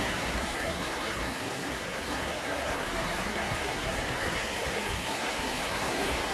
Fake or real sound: fake